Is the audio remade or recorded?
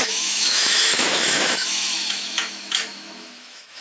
remade